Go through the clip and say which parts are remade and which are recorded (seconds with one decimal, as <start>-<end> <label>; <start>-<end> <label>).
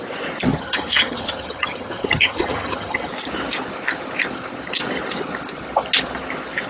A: 0.0-0.5 recorded; 0.5-3.1 remade; 3.1-6.7 recorded